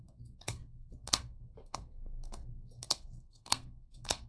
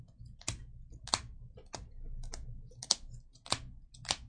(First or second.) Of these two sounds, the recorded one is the second